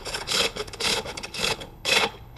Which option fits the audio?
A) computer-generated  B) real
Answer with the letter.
A